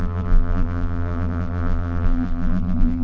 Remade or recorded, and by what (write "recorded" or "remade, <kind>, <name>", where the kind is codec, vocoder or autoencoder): remade, vocoder, BigVGAN v2